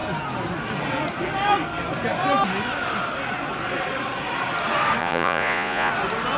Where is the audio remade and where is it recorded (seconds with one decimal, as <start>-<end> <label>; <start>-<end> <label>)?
0.0-5.0 recorded; 5.0-5.9 remade; 5.9-6.4 recorded